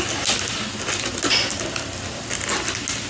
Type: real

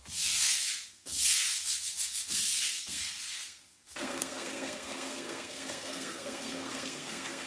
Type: fake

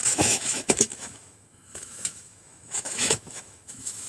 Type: fake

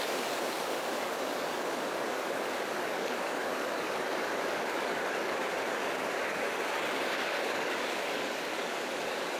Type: fake